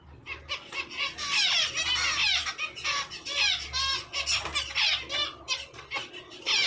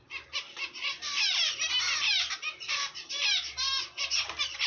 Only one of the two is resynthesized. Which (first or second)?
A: second